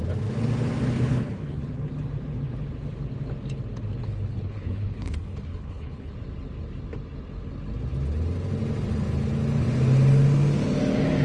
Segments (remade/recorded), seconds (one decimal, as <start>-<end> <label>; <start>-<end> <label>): 0.0-1.1 recorded; 1.1-1.6 remade; 1.6-4.0 recorded; 4.0-6.1 remade; 6.1-11.2 recorded